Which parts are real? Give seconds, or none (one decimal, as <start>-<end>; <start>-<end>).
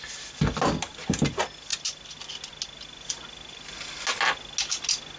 0.0-5.2